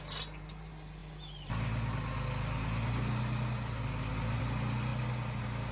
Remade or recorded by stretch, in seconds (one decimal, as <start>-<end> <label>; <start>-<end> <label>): 0.0-5.7 recorded